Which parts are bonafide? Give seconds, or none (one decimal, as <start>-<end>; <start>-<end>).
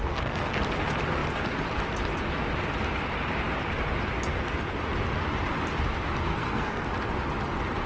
0.6-6.3; 6.9-7.9